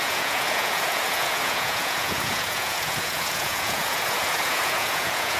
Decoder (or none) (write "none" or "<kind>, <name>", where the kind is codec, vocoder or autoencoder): vocoder, Vocos